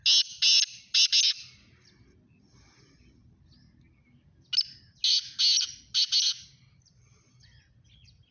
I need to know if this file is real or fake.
real